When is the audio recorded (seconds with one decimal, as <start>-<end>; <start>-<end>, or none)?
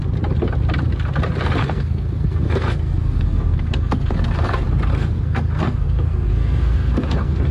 0.0-1.6; 4.5-4.9